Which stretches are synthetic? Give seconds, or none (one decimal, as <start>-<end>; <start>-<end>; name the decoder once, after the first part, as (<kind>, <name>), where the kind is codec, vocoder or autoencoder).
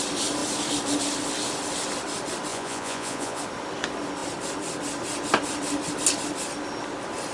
2.5-3.4 (vocoder, Vocos)